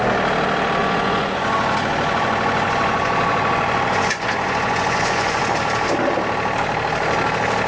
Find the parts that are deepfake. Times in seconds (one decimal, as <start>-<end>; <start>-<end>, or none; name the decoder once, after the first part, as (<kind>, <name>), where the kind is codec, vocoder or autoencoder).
0.8-5.4 (vocoder, Vocos)